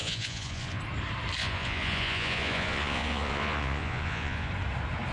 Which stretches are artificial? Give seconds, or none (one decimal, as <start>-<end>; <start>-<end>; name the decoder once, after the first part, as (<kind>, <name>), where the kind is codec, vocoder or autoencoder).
0.0-0.8 (vocoder, Vocos); 1.4-4.5